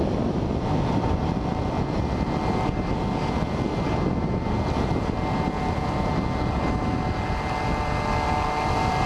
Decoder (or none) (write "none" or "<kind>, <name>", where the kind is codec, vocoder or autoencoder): none